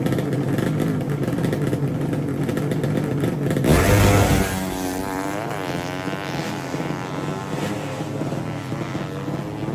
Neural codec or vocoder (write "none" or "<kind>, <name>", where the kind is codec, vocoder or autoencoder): none